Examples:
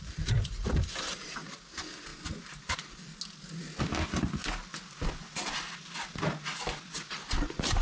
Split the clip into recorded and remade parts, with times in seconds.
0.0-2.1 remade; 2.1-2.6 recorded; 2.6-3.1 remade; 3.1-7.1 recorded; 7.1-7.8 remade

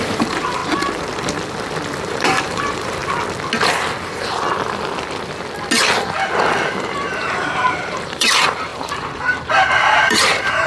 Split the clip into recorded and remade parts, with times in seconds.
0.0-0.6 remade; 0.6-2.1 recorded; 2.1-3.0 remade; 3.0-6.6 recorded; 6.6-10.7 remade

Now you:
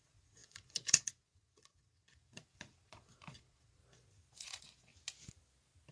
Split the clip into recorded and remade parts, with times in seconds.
0.0-3.8 remade; 3.8-4.3 recorded; 4.3-4.9 remade; 4.9-5.9 recorded

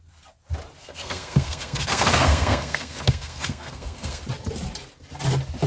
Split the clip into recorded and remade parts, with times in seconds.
0.0-0.8 recorded; 0.8-4.2 remade; 4.2-5.7 recorded